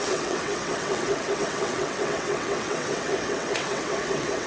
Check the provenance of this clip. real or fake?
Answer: fake